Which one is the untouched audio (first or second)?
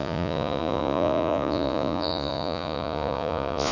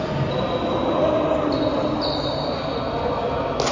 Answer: second